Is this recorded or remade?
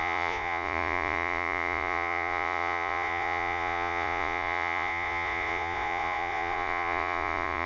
remade